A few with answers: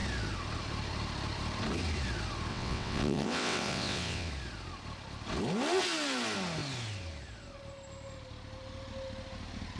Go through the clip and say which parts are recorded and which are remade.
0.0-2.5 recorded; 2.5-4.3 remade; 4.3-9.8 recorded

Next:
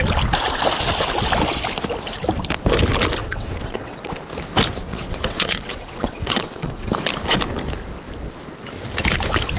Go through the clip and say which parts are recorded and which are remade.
0.0-3.2 recorded; 3.2-4.1 remade; 4.1-4.9 recorded; 4.9-6.9 remade; 6.9-9.6 recorded